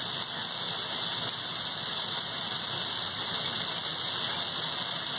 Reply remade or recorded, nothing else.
recorded